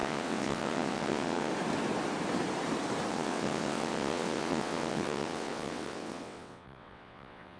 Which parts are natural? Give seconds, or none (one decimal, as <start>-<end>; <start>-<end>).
1.5-3.1